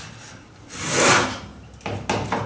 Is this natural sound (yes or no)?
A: yes